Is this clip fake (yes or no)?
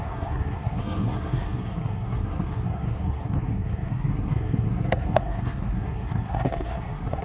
yes